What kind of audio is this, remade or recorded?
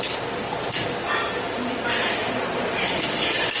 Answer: recorded